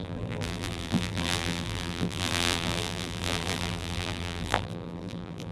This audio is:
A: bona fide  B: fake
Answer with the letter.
B